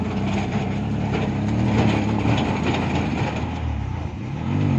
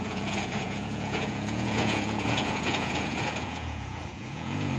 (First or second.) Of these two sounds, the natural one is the first